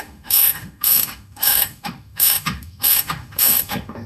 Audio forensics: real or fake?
fake